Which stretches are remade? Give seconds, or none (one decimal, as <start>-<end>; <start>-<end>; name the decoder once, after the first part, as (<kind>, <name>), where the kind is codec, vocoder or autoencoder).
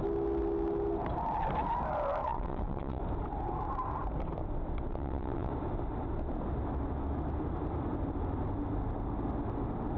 2.2-3.0 (vocoder, WaveNeXt); 4.9-5.5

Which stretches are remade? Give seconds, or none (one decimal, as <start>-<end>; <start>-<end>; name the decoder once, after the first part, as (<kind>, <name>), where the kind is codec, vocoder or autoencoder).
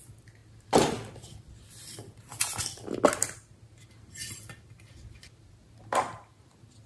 none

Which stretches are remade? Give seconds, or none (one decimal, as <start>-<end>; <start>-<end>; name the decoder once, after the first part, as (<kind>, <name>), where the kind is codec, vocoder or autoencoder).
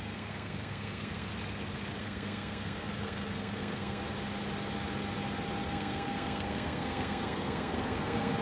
0.0-1.3 (codec, SNAC); 2.0-4.0; 5.7-8.4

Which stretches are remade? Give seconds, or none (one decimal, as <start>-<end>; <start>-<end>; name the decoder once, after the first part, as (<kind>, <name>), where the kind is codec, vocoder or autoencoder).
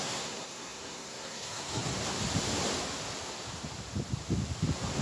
0.0-1.9 (codec, SNAC)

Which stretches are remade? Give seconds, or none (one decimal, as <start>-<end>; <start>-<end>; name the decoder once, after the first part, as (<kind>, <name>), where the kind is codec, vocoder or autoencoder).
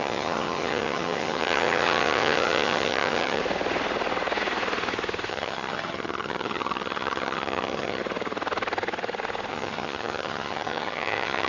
0.0-3.4 (vocoder, HiFi-GAN); 5.3-8.0; 9.5-11.5